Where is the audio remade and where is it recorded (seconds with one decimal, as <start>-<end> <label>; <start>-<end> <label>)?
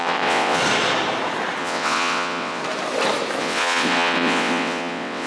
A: 0.0-0.6 remade; 0.6-1.6 recorded; 1.6-2.6 remade; 2.6-3.4 recorded; 3.4-5.3 remade